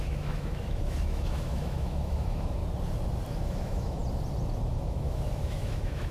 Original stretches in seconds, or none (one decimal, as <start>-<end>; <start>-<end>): 2.6-3.3; 4.0-4.7